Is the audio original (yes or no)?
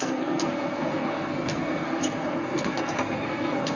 no